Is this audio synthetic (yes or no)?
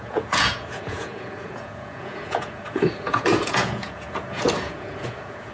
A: yes